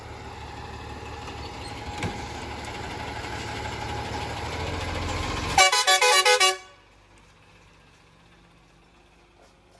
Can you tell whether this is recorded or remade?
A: recorded